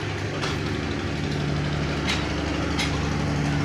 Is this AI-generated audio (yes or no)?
no